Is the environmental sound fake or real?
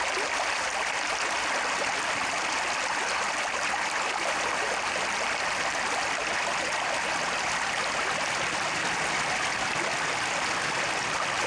real